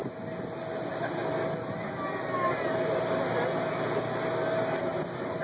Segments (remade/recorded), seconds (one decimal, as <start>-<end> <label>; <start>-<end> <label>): 0.0-4.9 recorded; 4.9-5.4 remade